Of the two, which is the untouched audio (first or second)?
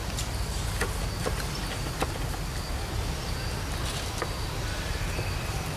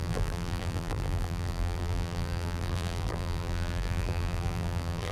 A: first